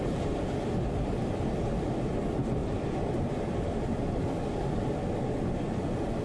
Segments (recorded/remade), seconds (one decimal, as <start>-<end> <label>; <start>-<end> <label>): 0.0-2.6 recorded; 2.6-3.3 remade; 3.3-6.2 recorded